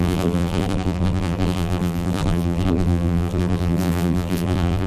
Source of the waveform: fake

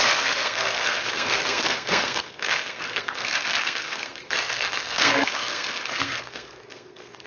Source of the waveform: fake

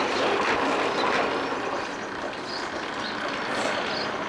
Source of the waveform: real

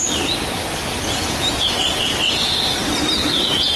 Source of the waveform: real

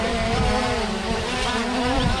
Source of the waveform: fake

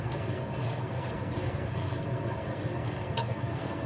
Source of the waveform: fake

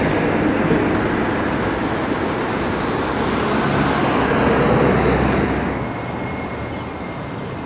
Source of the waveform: real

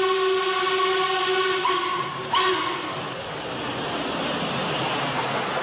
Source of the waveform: real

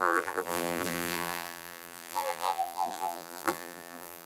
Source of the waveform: fake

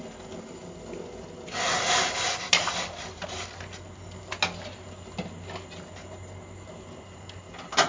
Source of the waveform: real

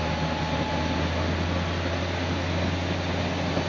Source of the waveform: real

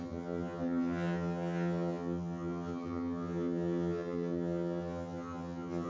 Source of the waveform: fake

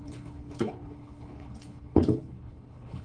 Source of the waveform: fake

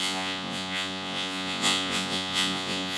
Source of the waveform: fake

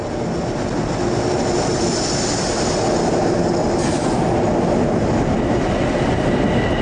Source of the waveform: real